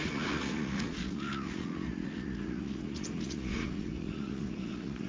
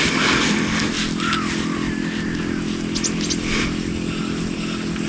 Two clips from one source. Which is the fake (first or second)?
first